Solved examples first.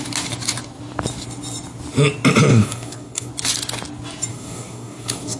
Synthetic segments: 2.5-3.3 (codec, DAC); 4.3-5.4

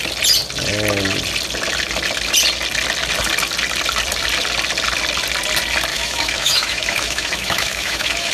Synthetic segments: 5.9-8.3 (autoencoder, DAC-VAE)